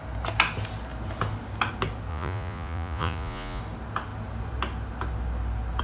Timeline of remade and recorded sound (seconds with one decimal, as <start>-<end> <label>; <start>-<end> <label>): 0.0-2.1 recorded; 2.1-3.6 remade; 3.6-5.8 recorded

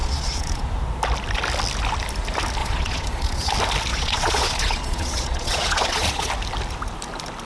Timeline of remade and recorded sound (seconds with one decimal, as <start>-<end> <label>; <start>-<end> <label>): 0.0-0.6 remade; 0.6-2.6 recorded; 2.6-3.5 remade; 3.5-3.9 recorded; 3.9-6.3 remade; 6.3-7.4 recorded

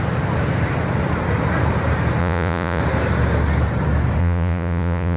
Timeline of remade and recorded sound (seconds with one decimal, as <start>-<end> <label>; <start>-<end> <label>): 0.0-2.2 recorded; 2.2-2.8 remade; 2.8-4.2 recorded; 4.2-5.2 remade

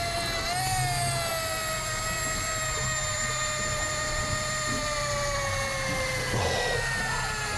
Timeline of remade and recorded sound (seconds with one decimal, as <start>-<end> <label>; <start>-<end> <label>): 0.0-7.6 recorded

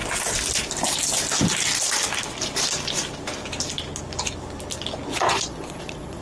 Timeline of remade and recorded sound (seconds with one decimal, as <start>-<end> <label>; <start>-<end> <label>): 0.0-5.1 recorded; 5.1-6.2 remade

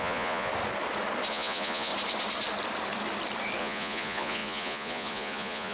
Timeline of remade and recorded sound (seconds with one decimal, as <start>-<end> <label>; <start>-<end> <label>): 0.0-0.5 remade; 0.5-1.3 recorded; 1.3-1.9 remade; 1.9-3.6 recorded; 3.6-5.7 remade

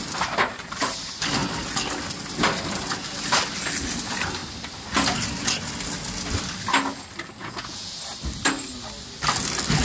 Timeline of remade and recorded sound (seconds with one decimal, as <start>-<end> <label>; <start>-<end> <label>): 0.0-7.4 recorded; 7.4-8.0 remade; 8.0-9.8 recorded

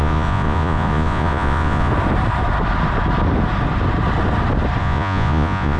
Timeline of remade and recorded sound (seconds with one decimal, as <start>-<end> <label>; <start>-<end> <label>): 0.0-1.9 remade; 1.9-4.8 recorded; 4.8-5.8 remade